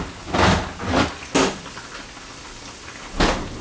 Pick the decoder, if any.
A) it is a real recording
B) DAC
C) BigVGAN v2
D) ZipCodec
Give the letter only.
A